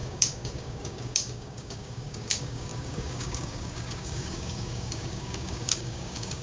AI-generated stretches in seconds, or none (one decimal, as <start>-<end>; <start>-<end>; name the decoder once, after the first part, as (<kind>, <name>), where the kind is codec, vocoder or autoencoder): 0.0-6.4 (codec, DAC)